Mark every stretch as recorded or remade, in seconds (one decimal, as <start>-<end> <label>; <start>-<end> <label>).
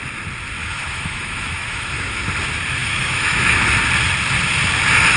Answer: 0.0-0.6 recorded; 0.6-2.2 remade; 2.2-2.8 recorded; 2.8-3.7 remade; 3.7-5.2 recorded